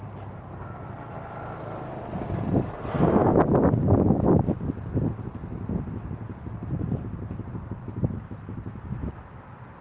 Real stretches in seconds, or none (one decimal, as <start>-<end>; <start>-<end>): 0.0-9.8